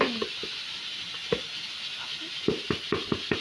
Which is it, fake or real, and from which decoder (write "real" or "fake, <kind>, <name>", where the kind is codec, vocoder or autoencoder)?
real